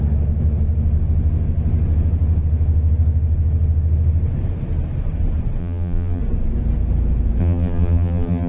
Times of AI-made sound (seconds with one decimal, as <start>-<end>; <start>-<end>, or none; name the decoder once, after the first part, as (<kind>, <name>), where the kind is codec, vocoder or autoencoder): 5.6-6.2 (vocoder, BigVGAN v2); 7.4-8.5